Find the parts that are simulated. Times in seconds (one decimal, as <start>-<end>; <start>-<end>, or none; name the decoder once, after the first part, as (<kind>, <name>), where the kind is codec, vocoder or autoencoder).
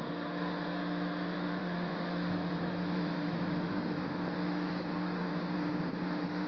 0.8-4.7 (autoencoder, DAC-VAE)